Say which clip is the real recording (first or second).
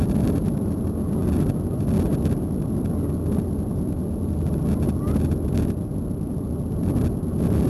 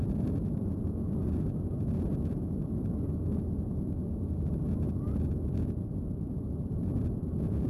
first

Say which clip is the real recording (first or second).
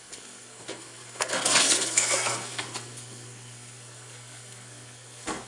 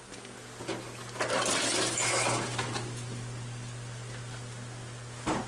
second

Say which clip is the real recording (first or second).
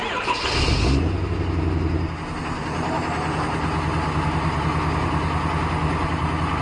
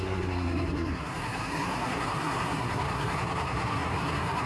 first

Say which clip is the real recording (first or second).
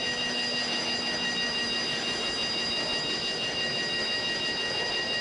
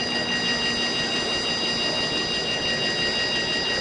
second